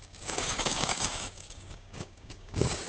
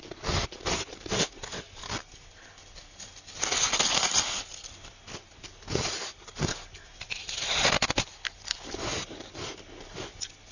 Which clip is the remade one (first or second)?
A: first